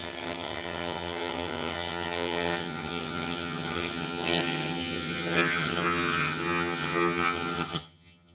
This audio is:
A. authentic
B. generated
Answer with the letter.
B